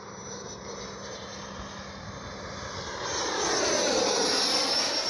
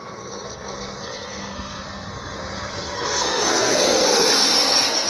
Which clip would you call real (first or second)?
first